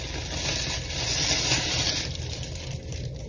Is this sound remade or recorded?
recorded